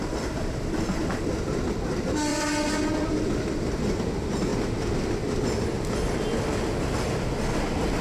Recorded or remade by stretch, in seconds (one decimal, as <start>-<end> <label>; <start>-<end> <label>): 0.0-1.3 remade; 1.3-2.3 recorded; 2.3-3.6 remade; 3.6-8.0 recorded